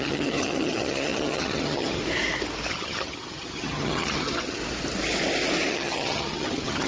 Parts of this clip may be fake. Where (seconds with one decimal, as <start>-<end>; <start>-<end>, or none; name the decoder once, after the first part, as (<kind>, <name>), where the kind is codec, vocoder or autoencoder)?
0.0-2.0 (vocoder, HiFi-GAN); 2.7-4.6; 5.7-6.9

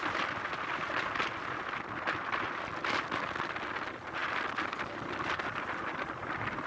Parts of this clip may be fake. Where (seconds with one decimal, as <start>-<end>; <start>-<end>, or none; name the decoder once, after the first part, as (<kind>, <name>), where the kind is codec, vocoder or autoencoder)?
none

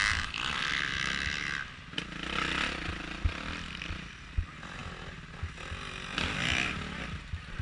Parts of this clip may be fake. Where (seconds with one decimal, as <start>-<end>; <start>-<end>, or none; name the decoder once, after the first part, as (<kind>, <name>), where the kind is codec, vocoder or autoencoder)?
none

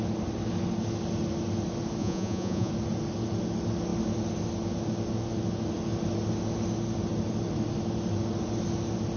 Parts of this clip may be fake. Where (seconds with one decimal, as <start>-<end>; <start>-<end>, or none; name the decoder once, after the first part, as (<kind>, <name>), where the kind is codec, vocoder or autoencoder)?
2.0-2.7 (vocoder, Vocos)

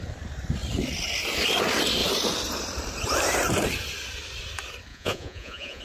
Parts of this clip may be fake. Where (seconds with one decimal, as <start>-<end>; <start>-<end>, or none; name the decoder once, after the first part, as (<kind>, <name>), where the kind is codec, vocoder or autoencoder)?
4.9-5.8 (vocoder, Vocos)

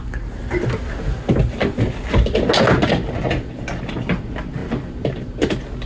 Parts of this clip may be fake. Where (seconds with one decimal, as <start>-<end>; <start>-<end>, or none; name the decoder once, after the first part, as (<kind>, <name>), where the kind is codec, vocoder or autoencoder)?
none

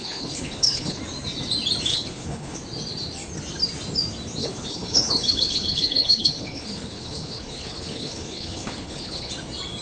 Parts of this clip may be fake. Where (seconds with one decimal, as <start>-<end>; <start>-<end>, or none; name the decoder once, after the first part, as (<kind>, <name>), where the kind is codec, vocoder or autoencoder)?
0.0-1.0 (codec, HILCodec); 1.9-2.6; 4.4-9.3